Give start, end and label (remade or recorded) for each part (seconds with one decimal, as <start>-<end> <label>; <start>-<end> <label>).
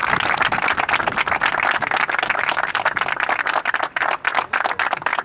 0.0-5.2 recorded